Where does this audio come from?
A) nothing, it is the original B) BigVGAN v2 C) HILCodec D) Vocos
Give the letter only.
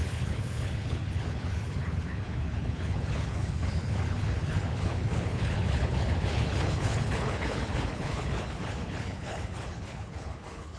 C